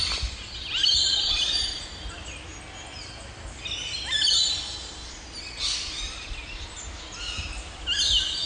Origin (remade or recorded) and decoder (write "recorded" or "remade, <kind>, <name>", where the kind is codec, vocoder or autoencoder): recorded